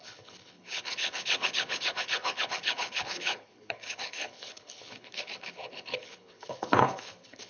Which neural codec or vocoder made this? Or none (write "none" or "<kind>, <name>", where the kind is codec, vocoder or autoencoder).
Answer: codec, HILCodec